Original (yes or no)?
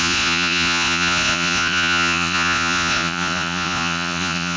no